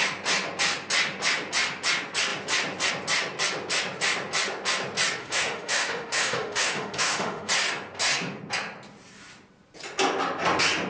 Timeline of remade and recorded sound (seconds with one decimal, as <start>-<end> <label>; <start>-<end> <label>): 0.0-5.2 recorded; 5.2-7.5 remade; 7.5-10.9 recorded